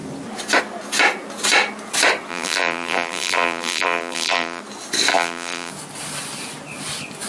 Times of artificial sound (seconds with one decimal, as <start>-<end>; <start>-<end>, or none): 2.3-4.6; 5.1-5.7